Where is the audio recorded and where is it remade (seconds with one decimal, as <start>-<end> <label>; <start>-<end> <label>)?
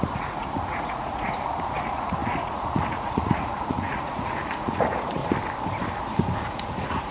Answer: 0.0-5.2 remade; 5.2-6.4 recorded; 6.4-7.1 remade